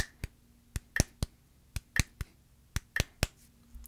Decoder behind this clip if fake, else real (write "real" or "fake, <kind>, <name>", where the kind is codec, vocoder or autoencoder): real